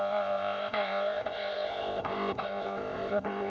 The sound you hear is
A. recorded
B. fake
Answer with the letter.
B